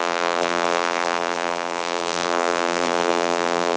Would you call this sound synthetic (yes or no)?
yes